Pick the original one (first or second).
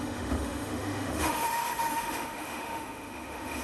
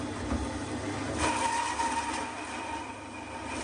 second